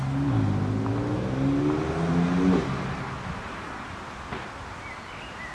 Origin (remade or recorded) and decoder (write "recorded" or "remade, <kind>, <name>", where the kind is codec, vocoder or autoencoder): recorded